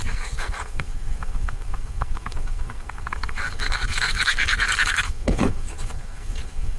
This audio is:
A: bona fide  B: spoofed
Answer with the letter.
B